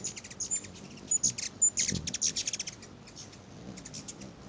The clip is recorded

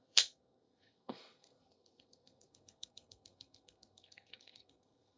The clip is remade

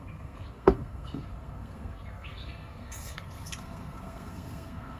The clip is remade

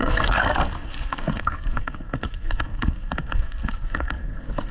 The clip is remade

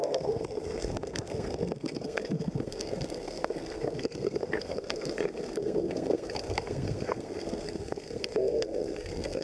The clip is remade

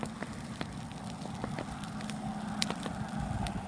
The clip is recorded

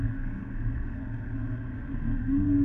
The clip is remade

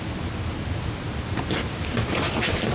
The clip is recorded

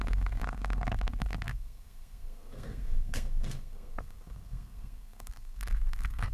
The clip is remade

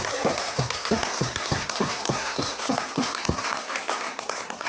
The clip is remade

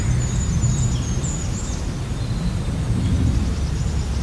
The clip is recorded